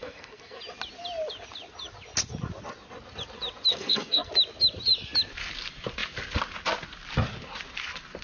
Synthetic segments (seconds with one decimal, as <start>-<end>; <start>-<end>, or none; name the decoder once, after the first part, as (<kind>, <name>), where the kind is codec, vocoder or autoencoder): 0.0-0.6 (codec, SNAC); 3.7-4.3